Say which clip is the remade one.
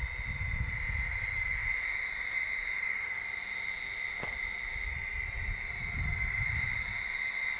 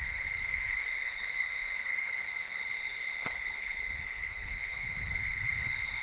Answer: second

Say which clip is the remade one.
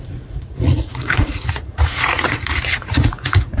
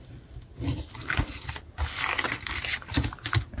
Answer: first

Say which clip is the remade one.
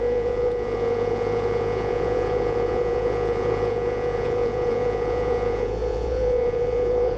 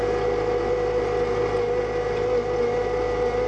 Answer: first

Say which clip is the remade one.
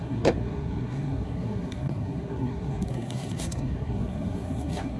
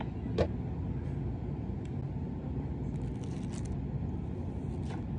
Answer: first